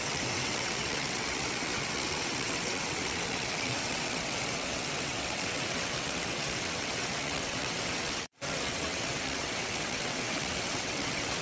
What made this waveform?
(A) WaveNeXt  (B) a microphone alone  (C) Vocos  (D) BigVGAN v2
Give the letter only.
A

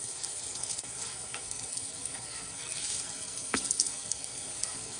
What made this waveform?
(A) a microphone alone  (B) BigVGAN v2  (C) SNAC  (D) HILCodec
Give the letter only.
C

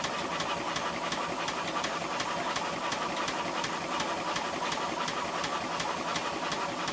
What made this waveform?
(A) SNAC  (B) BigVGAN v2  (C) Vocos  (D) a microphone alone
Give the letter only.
D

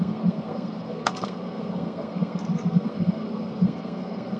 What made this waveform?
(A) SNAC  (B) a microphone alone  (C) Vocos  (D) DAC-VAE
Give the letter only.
A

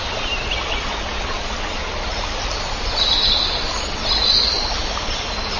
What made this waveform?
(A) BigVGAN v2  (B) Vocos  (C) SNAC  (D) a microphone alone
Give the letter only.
D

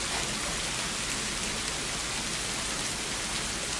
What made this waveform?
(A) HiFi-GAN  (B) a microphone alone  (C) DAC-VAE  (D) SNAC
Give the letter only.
B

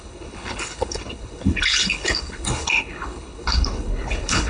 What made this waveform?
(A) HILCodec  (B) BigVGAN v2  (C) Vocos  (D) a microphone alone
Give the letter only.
A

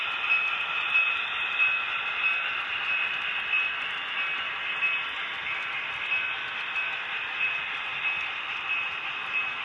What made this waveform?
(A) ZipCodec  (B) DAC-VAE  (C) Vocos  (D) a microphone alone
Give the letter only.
D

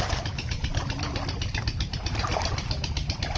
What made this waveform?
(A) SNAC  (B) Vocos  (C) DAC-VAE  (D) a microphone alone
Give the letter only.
D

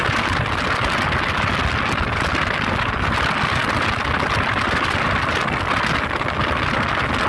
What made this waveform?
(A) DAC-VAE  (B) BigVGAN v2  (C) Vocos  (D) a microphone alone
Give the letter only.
D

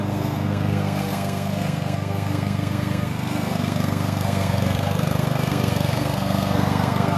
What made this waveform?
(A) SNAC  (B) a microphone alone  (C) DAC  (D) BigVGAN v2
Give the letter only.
A